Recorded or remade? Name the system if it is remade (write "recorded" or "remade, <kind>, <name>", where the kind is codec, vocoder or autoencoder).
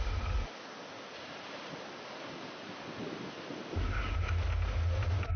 recorded